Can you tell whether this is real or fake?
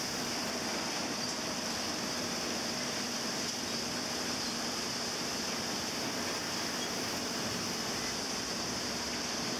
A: fake